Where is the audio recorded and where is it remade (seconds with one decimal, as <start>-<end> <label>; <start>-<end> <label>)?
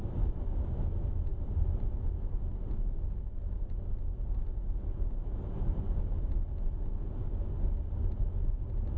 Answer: 0.0-9.0 recorded